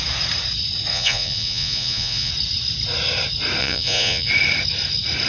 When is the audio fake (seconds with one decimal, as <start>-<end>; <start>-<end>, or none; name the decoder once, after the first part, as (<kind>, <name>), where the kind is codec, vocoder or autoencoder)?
0.9-2.3 (vocoder, Vocos); 3.6-4.3